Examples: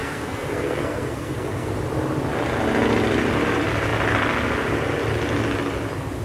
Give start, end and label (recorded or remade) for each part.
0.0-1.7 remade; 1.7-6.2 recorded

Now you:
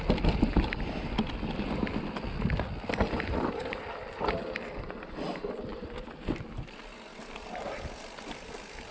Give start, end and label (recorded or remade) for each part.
0.0-8.9 recorded

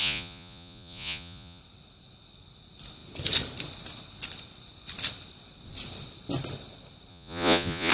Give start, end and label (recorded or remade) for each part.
0.0-1.6 remade; 1.6-7.1 recorded; 7.1-7.9 remade

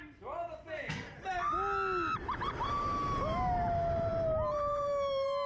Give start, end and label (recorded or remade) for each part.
0.0-5.5 recorded